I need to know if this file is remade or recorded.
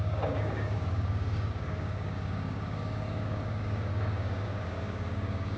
remade